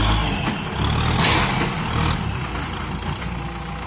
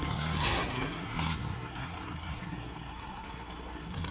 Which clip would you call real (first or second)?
first